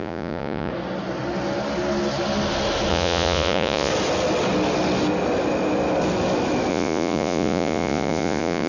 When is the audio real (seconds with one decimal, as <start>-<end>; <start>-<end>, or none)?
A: 0.7-2.9; 3.9-6.7